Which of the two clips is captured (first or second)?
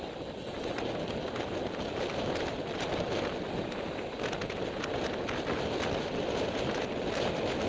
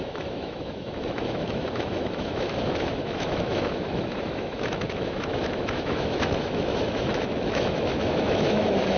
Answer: first